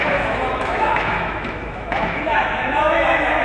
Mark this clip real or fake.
fake